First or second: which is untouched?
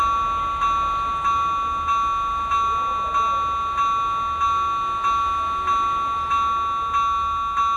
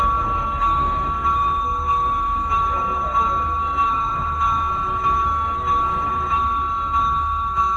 first